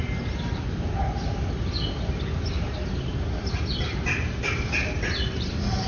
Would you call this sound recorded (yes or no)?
yes